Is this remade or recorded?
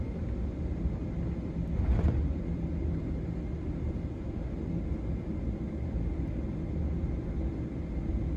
recorded